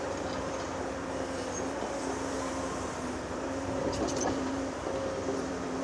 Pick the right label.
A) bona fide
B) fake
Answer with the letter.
B